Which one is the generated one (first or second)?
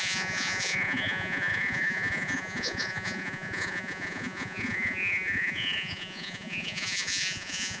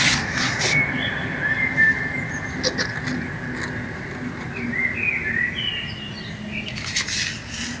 first